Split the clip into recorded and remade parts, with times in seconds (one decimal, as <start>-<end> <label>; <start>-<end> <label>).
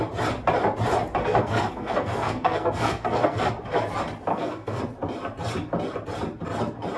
0.0-1.2 recorded; 1.2-3.5 remade; 3.5-4.3 recorded; 4.3-4.8 remade; 4.8-7.0 recorded